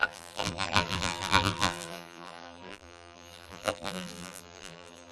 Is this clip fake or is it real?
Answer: fake